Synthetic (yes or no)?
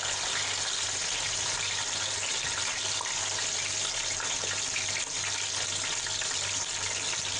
no